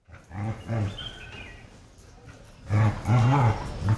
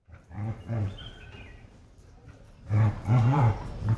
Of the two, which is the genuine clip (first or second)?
first